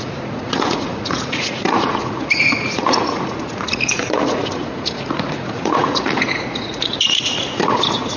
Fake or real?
fake